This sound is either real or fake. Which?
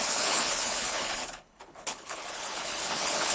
fake